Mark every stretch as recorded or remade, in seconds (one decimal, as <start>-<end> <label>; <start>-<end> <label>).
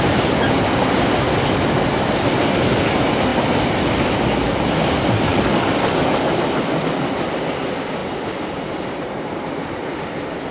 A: 0.0-5.3 recorded; 5.3-6.3 remade; 6.3-10.5 recorded